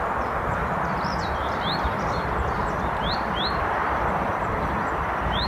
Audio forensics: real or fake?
fake